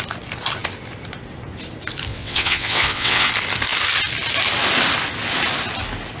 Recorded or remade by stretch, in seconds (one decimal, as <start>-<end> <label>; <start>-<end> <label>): 0.0-2.1 recorded; 2.1-3.3 remade; 3.3-6.2 recorded